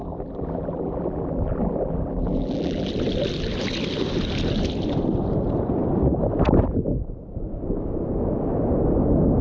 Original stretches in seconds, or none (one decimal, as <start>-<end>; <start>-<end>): 2.9-9.4